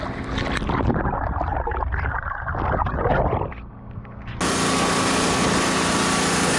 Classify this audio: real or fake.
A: real